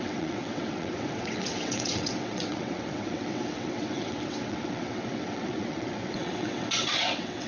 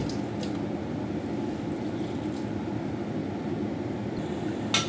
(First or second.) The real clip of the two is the second